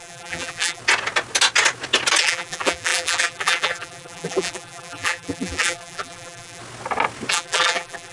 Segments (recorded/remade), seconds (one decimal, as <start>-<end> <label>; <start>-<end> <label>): 0.0-0.8 remade; 0.8-2.2 recorded; 2.2-6.6 remade; 6.6-7.3 recorded; 7.3-8.1 remade